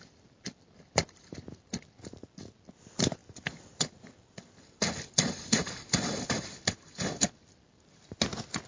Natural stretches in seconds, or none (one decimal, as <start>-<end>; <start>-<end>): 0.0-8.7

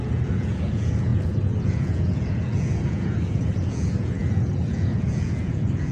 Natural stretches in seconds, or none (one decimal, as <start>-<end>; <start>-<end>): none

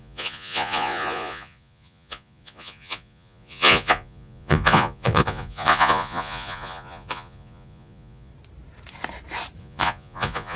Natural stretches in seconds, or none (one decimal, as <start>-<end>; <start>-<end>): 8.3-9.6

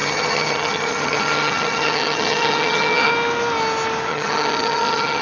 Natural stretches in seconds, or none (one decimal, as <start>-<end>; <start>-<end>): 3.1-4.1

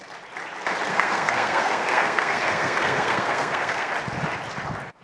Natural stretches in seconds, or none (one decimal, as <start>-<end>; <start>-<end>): 0.0-0.9; 3.9-5.0

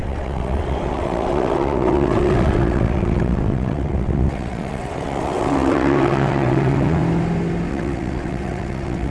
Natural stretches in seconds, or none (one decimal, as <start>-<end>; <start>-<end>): 7.0-7.7